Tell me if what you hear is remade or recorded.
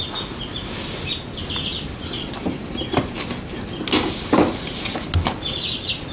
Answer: recorded